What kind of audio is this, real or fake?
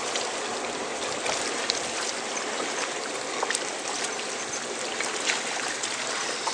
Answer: real